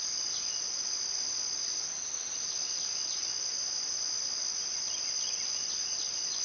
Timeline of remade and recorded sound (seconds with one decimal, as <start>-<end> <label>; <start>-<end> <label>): 0.0-6.4 recorded